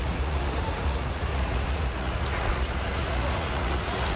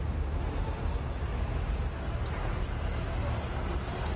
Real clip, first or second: second